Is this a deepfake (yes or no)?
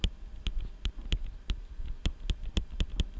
no